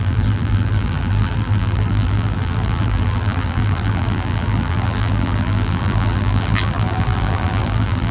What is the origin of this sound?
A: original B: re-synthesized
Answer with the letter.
B